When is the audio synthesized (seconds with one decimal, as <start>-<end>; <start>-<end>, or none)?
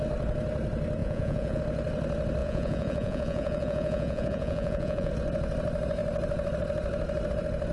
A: 1.0-1.6; 2.4-5.1